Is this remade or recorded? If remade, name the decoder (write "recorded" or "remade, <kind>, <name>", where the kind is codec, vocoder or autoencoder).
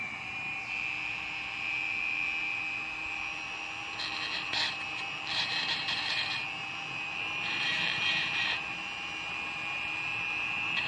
remade, vocoder, BigVGAN v2